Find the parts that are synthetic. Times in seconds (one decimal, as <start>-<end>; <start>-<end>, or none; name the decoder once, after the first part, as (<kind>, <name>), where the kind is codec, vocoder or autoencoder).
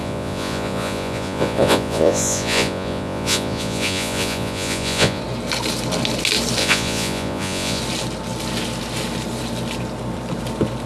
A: 0.0-5.2 (vocoder, Vocos); 6.6-7.8